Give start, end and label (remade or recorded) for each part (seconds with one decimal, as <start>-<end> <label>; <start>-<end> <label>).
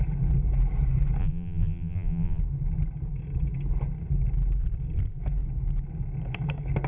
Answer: 0.0-1.2 recorded; 1.2-2.4 remade; 2.4-6.9 recorded